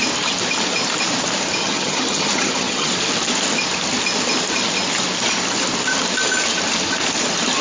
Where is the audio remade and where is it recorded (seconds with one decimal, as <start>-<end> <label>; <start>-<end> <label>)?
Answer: 0.0-1.6 recorded; 1.6-2.9 remade; 2.9-7.6 recorded